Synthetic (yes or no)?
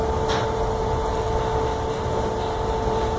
no